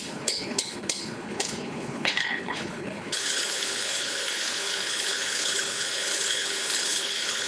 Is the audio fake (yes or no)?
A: yes